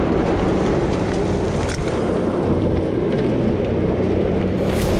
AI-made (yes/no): yes